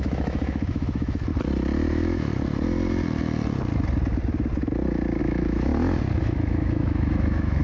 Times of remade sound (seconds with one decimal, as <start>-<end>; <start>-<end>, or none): 0.0-1.3; 1.9-2.3; 5.2-5.7; 6.2-7.6